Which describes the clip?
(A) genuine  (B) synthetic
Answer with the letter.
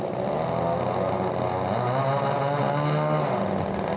A